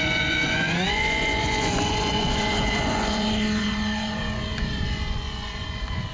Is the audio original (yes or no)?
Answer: no